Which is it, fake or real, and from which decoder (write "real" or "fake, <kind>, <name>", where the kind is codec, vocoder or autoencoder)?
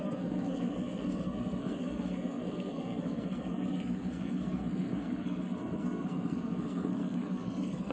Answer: fake, codec, SNAC